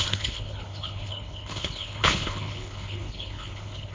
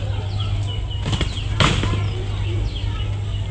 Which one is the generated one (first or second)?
first